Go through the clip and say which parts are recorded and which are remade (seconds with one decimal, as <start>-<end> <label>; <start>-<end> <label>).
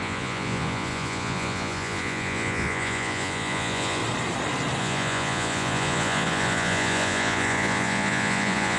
0.0-4.0 remade; 4.0-4.8 recorded; 4.8-8.8 remade